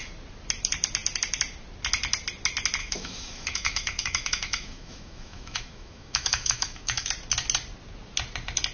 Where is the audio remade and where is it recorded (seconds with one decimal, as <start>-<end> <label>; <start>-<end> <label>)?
0.0-2.8 recorded; 2.8-7.1 remade; 7.1-8.7 recorded